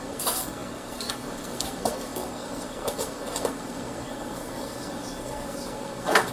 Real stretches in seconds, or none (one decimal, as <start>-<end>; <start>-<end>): none